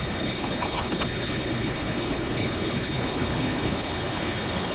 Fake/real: fake